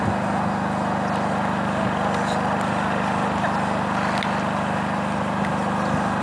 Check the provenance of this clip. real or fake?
real